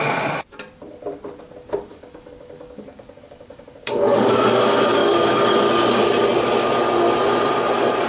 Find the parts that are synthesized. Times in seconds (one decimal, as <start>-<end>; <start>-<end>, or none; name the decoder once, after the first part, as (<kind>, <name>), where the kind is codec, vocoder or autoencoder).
1.9-4.4 (codec, DAC); 5.0-5.6